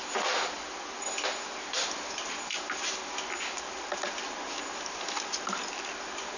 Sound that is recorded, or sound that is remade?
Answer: recorded